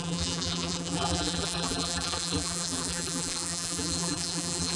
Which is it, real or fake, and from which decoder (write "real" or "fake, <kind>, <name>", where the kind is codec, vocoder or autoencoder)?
fake, vocoder, BigVGAN v2